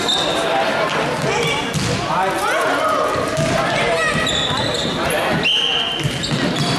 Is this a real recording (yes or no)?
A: yes